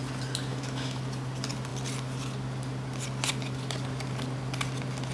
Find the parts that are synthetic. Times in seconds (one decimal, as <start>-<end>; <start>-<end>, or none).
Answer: 0.5-1.0